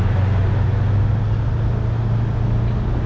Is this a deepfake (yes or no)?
no